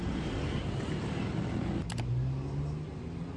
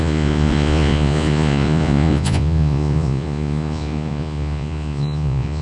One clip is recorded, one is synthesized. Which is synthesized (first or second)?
second